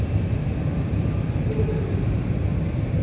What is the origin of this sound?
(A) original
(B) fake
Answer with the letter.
A